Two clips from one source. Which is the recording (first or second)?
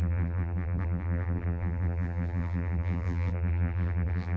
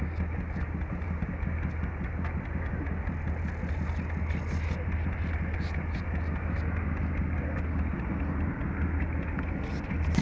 second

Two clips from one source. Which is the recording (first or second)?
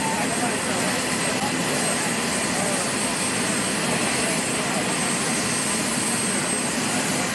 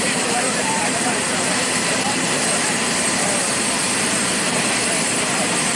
first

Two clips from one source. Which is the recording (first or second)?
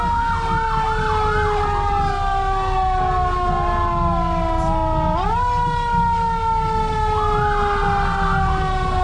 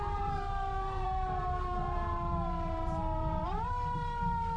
first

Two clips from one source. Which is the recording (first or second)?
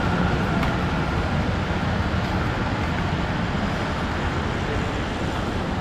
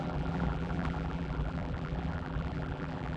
first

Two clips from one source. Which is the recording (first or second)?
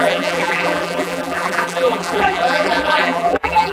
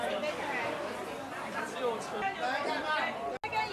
second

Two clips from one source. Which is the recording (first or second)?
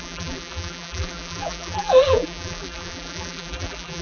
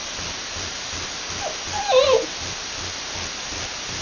second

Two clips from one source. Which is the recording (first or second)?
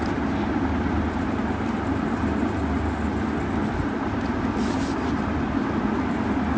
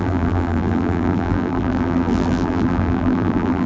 first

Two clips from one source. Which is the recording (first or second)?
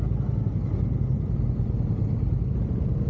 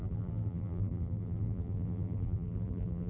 first